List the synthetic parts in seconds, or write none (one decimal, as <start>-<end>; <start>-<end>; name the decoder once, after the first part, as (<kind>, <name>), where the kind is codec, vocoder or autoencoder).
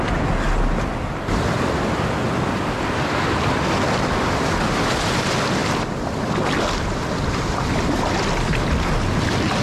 none